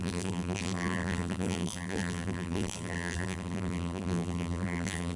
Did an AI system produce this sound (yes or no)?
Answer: yes